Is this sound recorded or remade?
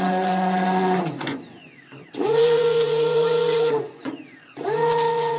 remade